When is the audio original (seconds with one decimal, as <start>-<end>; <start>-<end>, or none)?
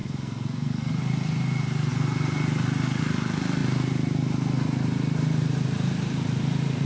0.9-6.9